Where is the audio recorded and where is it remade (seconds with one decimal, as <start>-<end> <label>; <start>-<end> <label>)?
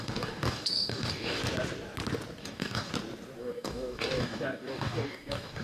0.0-1.4 remade; 1.4-2.4 recorded; 2.4-2.9 remade; 2.9-3.4 recorded; 3.4-5.6 remade